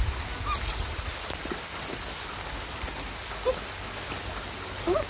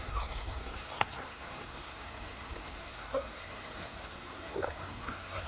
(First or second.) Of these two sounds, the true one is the first